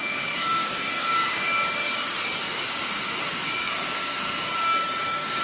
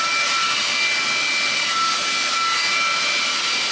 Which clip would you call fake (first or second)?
first